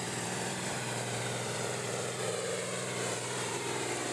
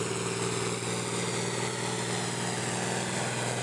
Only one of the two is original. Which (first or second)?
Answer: second